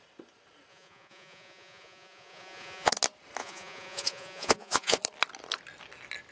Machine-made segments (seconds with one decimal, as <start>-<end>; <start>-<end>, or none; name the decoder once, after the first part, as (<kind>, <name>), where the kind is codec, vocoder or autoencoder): 0.7-2.9 (vocoder, Vocos); 3.4-5.0